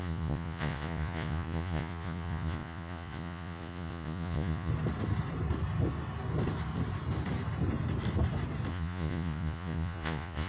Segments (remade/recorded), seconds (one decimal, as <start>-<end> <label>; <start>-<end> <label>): 0.0-4.7 remade; 4.7-8.7 recorded; 8.7-10.5 remade